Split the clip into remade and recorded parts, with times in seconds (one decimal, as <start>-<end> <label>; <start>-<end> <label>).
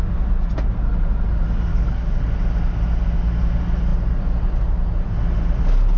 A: 0.0-1.7 recorded; 1.7-2.2 remade; 2.2-6.0 recorded